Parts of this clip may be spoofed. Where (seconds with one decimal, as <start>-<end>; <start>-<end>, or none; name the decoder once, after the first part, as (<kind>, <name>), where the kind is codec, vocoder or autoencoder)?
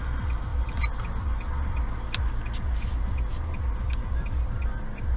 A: none